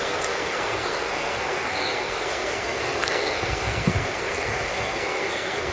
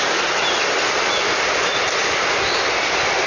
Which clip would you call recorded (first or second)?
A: second